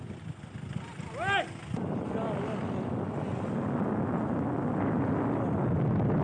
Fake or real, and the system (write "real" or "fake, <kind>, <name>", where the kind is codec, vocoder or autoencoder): real